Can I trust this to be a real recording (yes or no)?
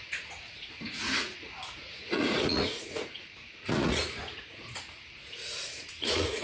no